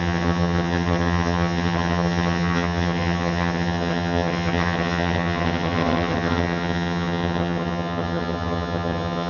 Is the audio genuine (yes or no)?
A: no